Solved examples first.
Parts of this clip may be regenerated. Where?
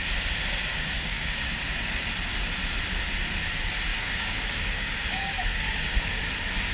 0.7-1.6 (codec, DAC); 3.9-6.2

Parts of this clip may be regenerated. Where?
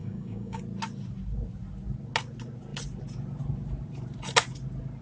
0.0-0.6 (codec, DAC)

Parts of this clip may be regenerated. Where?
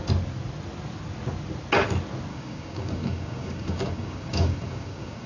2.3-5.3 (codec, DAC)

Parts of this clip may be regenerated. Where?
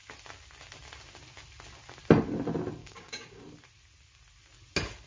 2.8-3.4 (codec, DAC)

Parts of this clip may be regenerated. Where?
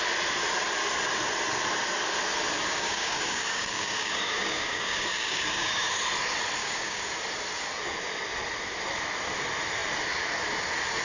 2.7-5.9 (codec, DAC); 6.6-7.1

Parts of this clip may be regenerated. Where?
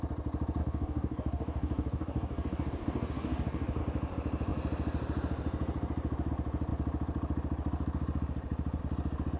0.6-3.8 (codec, DAC)